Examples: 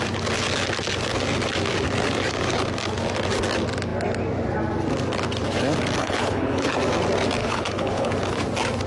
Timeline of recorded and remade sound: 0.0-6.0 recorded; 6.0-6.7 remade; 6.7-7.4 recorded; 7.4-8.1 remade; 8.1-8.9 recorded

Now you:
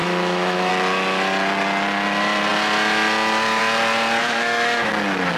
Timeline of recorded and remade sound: 0.0-0.7 remade; 0.7-4.2 recorded; 4.2-4.9 remade; 4.9-5.4 recorded